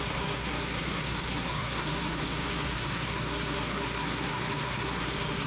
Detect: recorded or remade remade